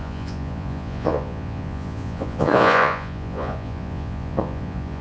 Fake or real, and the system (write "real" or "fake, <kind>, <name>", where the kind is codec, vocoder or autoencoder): fake, vocoder, Vocos